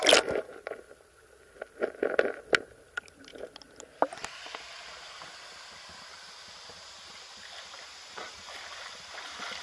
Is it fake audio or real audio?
real